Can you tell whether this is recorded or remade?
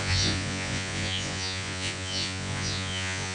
remade